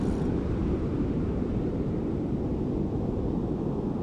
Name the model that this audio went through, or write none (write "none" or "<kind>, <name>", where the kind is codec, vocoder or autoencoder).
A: none